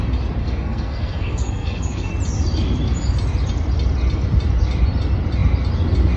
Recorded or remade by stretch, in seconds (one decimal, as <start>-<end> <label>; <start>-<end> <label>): 0.0-0.4 recorded; 0.4-2.1 remade; 2.1-6.2 recorded